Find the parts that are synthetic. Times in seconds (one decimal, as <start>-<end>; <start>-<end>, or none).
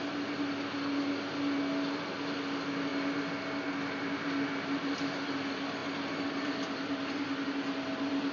none